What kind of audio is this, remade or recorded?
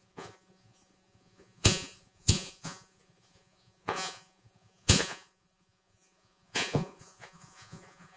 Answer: remade